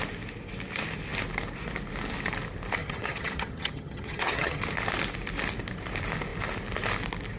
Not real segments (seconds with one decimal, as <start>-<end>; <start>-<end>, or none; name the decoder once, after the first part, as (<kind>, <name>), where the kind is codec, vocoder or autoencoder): 2.8-4.6 (vocoder, HiFi-GAN)